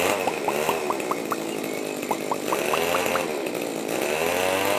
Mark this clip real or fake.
real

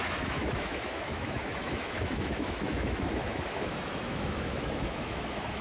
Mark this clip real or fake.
fake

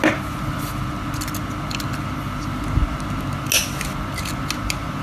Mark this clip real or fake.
real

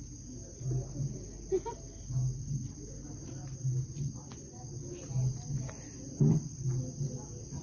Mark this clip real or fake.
real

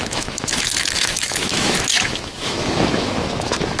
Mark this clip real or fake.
fake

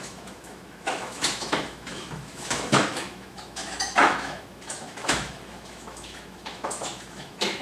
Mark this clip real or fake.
fake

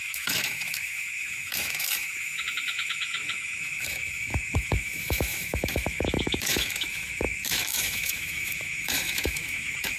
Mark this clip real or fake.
fake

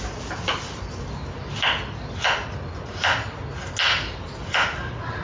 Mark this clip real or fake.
real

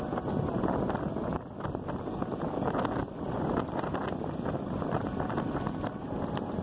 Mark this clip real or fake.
real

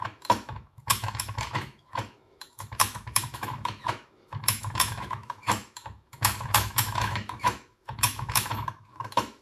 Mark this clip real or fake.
fake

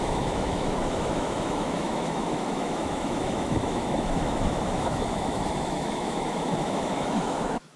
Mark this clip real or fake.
fake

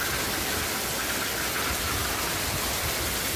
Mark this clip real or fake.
real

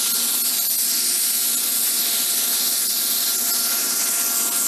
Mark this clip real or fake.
real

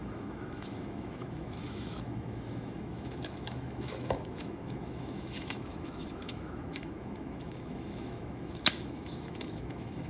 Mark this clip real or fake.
fake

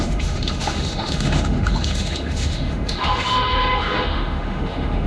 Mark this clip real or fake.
fake